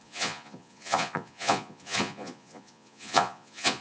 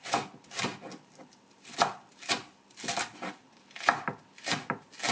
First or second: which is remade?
first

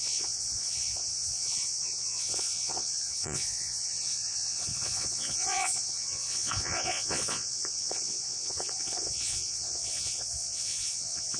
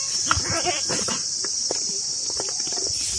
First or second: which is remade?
first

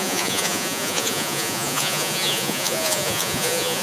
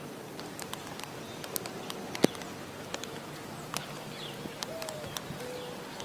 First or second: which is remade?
first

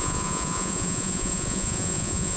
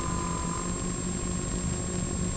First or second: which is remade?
first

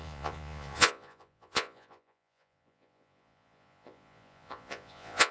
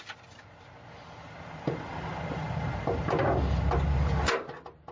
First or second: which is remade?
first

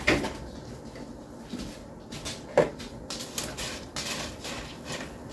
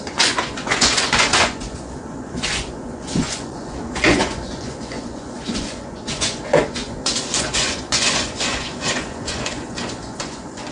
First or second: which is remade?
second